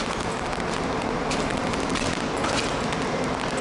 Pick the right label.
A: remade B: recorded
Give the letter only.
B